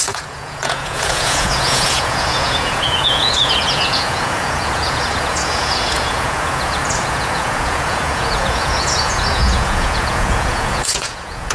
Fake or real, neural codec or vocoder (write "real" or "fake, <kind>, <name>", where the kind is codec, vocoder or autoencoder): fake, vocoder, Vocos